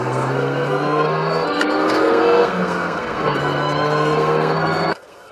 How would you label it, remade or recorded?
remade